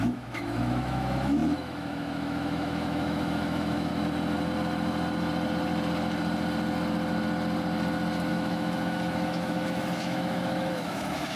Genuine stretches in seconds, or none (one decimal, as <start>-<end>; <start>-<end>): 3.9-8.3